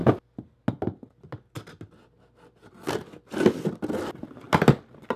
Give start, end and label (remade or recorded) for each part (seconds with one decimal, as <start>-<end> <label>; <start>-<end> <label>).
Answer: 0.0-5.2 recorded